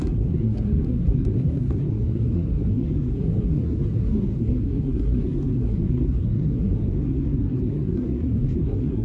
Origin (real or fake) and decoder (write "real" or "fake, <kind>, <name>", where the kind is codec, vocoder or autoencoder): fake, codec, SNAC